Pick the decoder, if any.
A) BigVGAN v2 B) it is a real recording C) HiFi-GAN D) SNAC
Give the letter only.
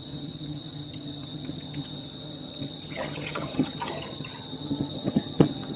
C